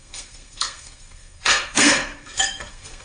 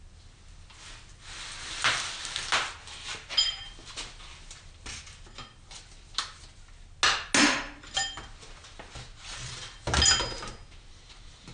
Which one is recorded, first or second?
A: second